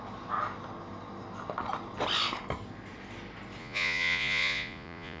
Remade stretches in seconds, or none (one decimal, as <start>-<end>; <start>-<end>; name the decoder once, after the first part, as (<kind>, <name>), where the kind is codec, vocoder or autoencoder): 3.6-5.2 (vocoder, Vocos)